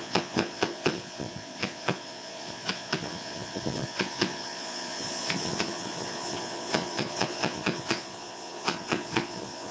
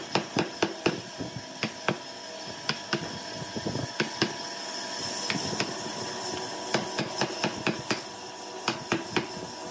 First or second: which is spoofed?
first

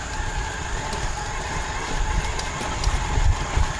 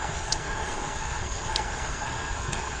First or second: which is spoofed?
second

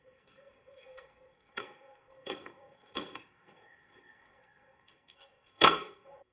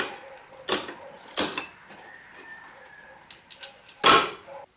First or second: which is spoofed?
first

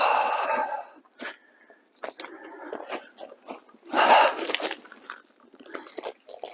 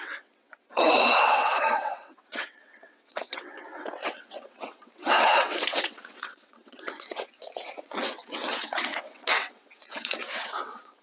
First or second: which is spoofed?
second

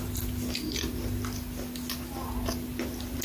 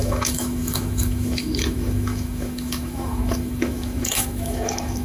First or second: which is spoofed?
second